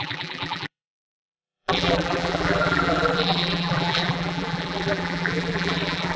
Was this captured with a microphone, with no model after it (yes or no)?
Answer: no